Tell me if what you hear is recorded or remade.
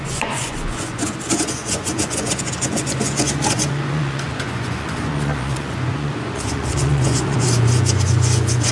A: remade